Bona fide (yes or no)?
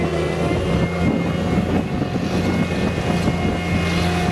yes